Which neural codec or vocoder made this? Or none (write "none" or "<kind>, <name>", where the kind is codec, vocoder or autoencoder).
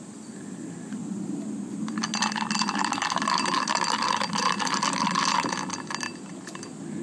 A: none